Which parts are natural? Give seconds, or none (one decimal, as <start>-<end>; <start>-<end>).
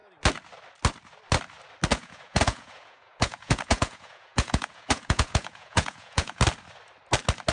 0.0-1.9; 6.4-7.5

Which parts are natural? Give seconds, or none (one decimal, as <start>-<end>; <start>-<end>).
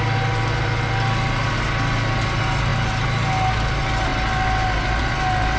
0.0-5.6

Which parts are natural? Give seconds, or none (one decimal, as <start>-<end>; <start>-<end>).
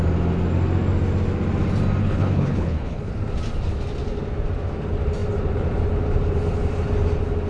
0.0-2.0; 3.1-7.5